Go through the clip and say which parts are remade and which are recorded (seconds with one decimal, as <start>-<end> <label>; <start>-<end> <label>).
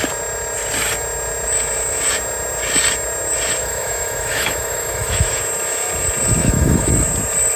0.0-3.6 recorded; 3.6-5.4 remade; 5.4-6.4 recorded; 6.4-6.9 remade; 6.9-7.6 recorded